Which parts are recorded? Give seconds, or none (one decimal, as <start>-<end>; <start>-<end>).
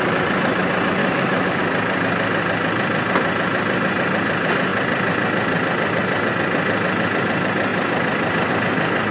0.0-1.0; 1.6-9.1